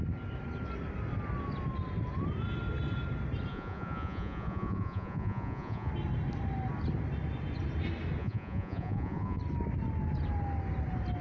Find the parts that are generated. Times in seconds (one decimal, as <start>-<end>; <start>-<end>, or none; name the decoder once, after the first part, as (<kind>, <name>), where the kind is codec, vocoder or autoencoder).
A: 3.5-5.9 (vocoder, Vocos); 8.2-9.4